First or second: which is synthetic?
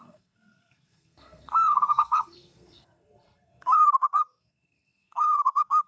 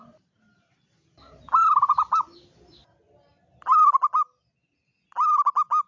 first